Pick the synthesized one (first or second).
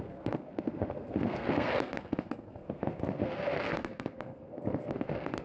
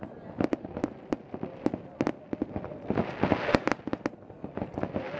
first